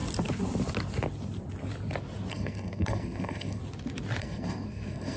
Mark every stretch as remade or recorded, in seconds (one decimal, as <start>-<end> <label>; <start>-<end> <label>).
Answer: 0.0-2.3 recorded; 2.3-3.6 remade; 3.6-4.2 recorded; 4.2-5.2 remade